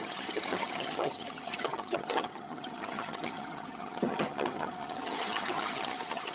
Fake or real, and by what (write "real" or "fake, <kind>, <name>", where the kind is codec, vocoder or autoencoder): fake, vocoder, HiFi-GAN